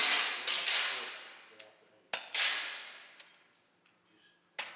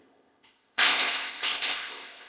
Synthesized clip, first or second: second